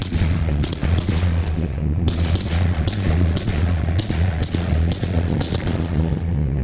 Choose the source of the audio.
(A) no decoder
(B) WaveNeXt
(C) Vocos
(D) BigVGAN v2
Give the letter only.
C